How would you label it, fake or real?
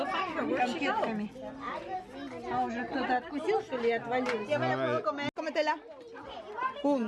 real